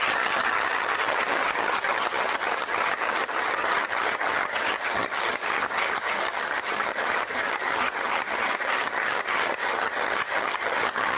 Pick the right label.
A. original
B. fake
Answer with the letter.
B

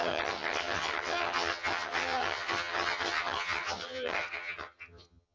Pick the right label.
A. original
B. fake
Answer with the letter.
B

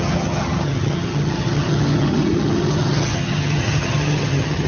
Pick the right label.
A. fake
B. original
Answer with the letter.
A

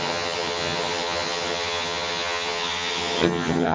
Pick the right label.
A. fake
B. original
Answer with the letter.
A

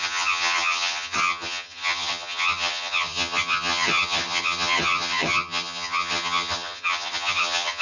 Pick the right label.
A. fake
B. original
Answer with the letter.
A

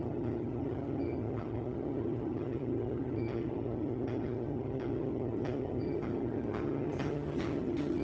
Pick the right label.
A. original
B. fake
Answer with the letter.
B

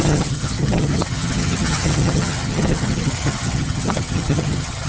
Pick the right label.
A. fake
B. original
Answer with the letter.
A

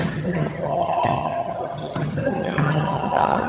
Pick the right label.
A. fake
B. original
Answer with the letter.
A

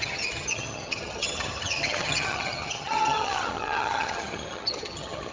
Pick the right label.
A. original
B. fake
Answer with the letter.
B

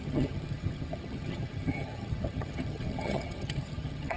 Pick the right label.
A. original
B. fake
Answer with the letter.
B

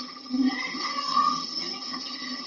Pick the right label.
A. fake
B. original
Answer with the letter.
A